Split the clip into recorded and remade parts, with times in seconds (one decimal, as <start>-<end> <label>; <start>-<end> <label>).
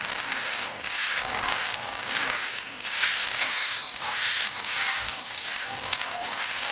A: 0.0-6.7 remade